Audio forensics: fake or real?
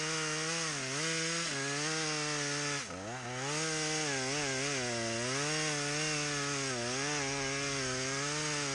real